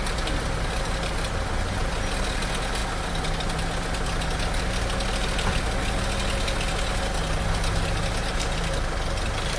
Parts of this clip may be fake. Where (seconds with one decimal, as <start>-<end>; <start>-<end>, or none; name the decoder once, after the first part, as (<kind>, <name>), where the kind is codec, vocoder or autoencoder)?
none